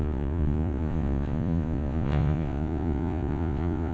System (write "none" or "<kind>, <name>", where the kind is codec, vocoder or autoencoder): vocoder, Vocos